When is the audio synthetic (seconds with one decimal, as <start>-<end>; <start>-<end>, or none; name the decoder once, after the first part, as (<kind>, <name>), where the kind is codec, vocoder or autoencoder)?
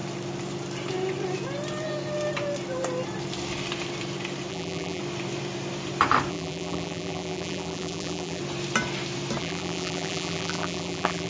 4.5-5.0 (vocoder, BigVGAN v2); 6.3-8.4; 9.4-11.3